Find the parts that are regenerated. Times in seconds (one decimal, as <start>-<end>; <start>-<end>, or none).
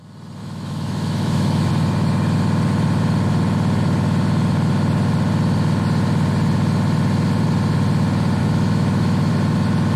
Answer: 0.4-1.7; 8.4-9.3